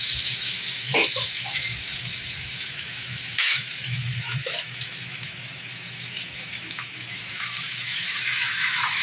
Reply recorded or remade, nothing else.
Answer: remade